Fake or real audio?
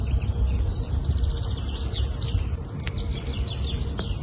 real